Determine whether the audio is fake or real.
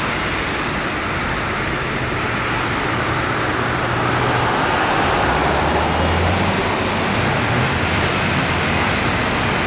real